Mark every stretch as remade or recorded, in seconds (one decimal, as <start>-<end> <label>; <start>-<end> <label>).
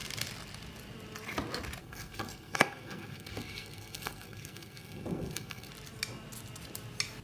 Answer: 0.0-1.8 recorded; 1.8-5.7 remade; 5.7-7.2 recorded